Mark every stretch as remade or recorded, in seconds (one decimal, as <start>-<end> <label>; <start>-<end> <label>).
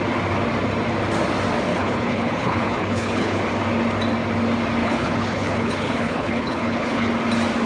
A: 0.0-1.7 recorded; 1.7-3.4 remade; 3.4-4.8 recorded; 4.8-7.1 remade; 7.1-7.7 recorded